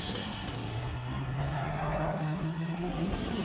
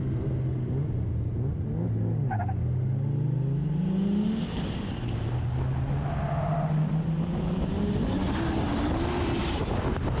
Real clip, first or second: second